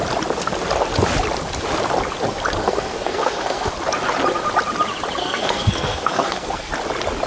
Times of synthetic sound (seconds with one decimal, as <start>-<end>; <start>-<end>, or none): 2.6-3.7; 5.2-6.7